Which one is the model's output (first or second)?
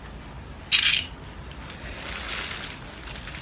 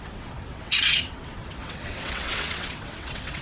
second